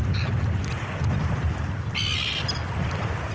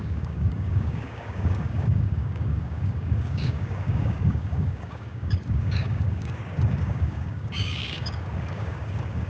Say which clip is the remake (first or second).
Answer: second